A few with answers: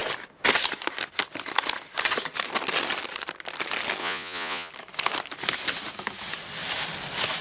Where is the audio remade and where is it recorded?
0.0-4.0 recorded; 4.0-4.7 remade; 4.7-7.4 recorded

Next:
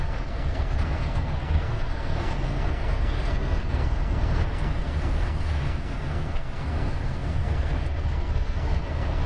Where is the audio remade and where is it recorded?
0.0-9.3 remade

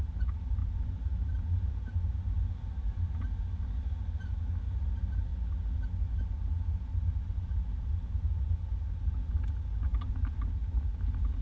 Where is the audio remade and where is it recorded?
0.0-11.4 recorded

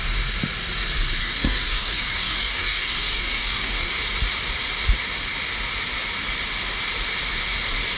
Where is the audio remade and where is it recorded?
0.0-1.2 recorded; 1.2-3.9 remade; 3.9-8.0 recorded